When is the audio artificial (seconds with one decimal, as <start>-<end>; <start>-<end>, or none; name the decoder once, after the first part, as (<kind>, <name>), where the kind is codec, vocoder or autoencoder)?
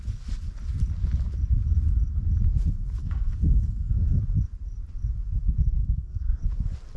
3.0-4.2 (codec, SNAC); 5.8-6.4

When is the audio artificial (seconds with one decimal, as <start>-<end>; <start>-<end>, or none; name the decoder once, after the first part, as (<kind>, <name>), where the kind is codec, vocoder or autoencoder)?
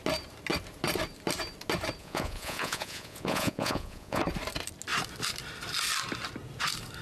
2.0-4.2 (vocoder, Vocos)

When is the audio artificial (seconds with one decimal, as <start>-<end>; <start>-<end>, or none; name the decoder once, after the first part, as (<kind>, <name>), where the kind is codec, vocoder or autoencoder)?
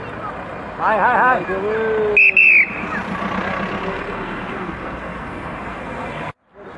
3.9-6.3 (codec, SNAC)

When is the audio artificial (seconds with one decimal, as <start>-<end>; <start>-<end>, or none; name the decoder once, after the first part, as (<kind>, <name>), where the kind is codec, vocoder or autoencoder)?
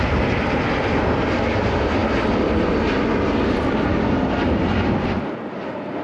none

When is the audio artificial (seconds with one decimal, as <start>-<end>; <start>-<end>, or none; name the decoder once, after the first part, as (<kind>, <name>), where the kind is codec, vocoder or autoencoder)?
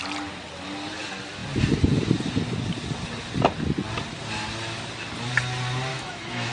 5.9-6.5 (autoencoder, DAC-VAE)